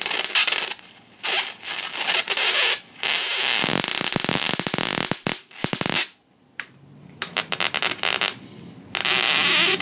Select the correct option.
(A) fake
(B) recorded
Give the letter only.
B